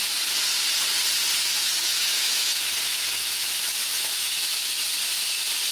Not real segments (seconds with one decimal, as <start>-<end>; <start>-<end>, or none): 1.4-4.8